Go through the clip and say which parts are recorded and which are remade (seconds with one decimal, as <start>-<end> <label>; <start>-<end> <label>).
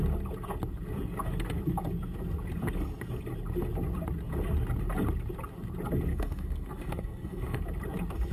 0.0-6.1 recorded; 6.1-7.6 remade; 7.6-8.3 recorded